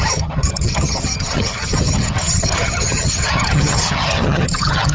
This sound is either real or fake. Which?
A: fake